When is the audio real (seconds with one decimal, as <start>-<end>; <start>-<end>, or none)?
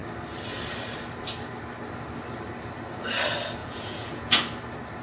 0.0-3.6; 4.4-5.0